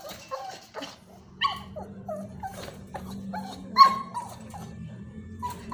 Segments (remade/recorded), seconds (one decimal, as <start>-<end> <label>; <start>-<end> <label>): 0.0-4.1 remade; 4.1-4.7 recorded; 4.7-5.7 remade

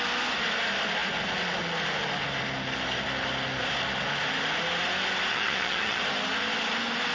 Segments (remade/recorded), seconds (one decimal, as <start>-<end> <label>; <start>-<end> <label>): 0.0-5.3 recorded; 5.3-6.0 remade; 6.0-7.1 recorded

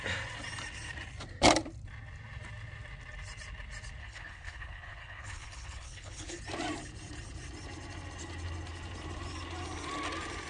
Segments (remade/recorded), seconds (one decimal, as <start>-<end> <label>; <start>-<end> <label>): 0.0-4.0 recorded; 4.0-6.4 remade; 6.4-10.5 recorded